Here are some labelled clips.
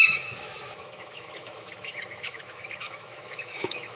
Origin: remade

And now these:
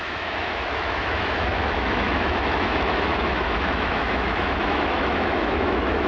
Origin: remade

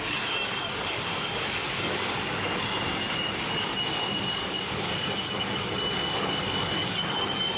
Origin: remade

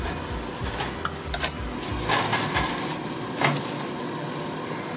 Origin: recorded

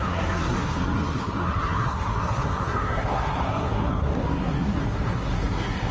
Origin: remade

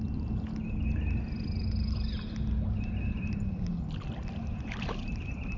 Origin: recorded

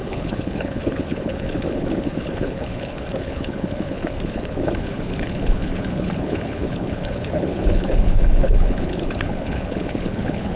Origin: remade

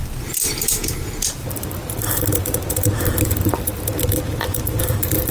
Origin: remade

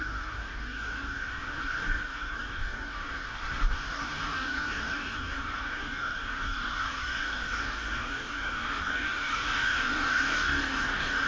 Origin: remade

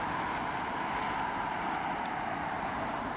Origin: recorded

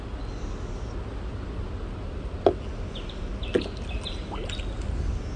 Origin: recorded